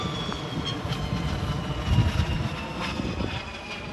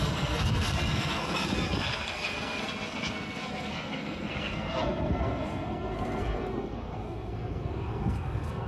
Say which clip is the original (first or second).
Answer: first